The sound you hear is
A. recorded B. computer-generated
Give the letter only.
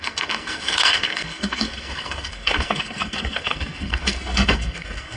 B